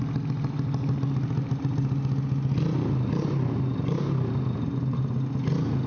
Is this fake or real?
real